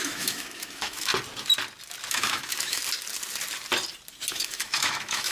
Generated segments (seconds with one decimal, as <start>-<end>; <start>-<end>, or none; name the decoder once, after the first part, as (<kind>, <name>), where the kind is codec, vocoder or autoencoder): 0.0-1.1 (autoencoder, DAC-VAE); 2.1-2.8; 4.3-5.3